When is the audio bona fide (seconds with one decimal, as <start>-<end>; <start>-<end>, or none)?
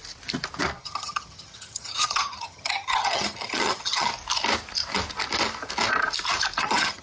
0.0-0.8; 4.1-6.6